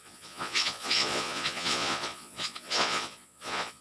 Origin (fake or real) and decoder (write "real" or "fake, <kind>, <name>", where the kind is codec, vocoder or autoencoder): fake, vocoder, Vocos